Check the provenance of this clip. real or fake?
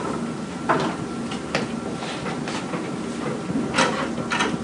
real